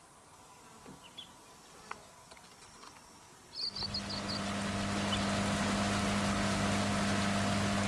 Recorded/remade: recorded